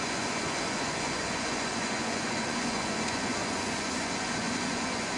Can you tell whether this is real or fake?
fake